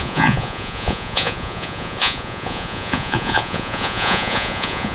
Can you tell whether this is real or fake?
fake